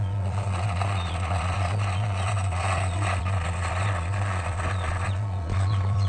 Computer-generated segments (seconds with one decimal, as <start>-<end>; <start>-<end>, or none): 0.0-6.1